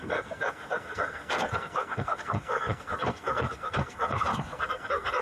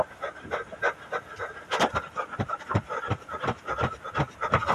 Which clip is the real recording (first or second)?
second